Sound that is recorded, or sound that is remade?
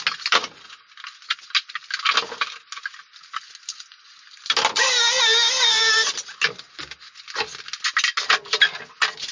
recorded